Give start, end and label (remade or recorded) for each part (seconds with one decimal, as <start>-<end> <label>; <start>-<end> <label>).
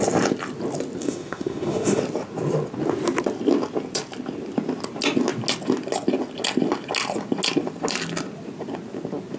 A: 0.0-1.0 recorded; 1.0-2.0 remade; 2.0-9.4 recorded